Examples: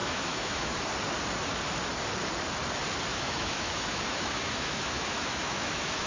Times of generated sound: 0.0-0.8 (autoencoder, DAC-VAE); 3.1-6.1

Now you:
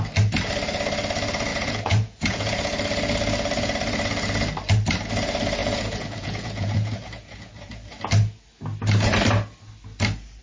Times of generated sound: 1.5-2.7 (vocoder, Vocos); 5.6-8.1

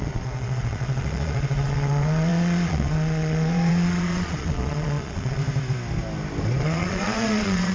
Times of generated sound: 0.0-5.4 (vocoder, Vocos); 6.6-7.7

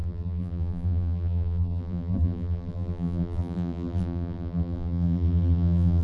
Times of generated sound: 0.0-6.0 (vocoder, BigVGAN v2)

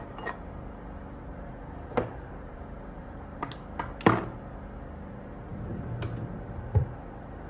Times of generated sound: 1.3-3.6 (vocoder, BigVGAN v2)

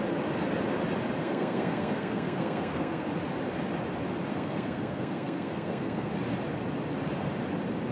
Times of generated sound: 1.2-3.1 (codec, SNAC); 4.3-6.1

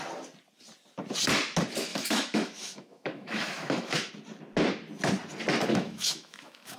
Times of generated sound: 1.9-4.1 (autoencoder, DAC-VAE); 5.7-6.8